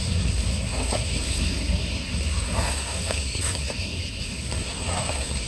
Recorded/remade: remade